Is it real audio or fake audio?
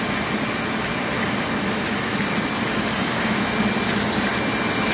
real